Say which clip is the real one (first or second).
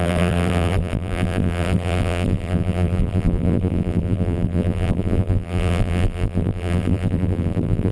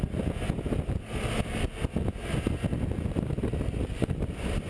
second